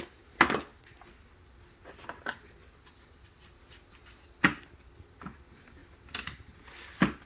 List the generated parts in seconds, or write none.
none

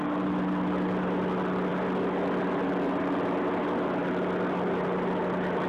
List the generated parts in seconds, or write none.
none

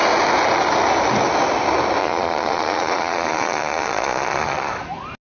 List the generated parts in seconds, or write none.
2.0-4.7 (vocoder, Vocos)

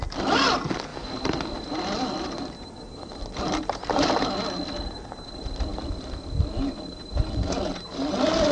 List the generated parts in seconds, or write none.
none